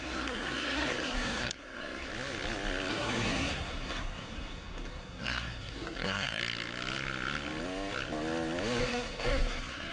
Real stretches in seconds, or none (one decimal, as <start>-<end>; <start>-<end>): 2.1-2.9; 6.4-8.8